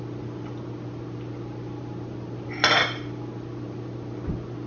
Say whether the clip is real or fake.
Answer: real